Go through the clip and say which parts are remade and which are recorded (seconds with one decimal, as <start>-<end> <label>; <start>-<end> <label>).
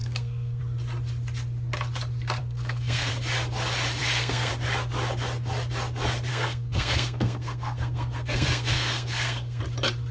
0.0-0.6 remade; 0.6-2.4 recorded; 2.4-3.1 remade; 3.1-4.0 recorded; 4.0-4.5 remade; 4.5-6.3 recorded; 6.3-9.6 remade; 9.6-10.1 recorded